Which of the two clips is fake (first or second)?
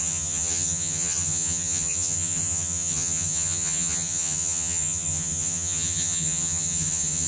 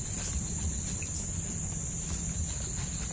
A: first